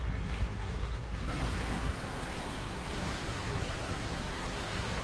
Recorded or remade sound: remade